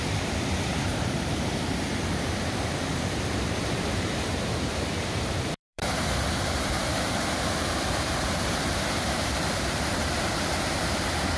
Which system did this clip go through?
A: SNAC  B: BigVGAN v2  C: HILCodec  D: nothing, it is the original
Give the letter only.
B